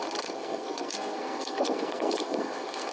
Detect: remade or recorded remade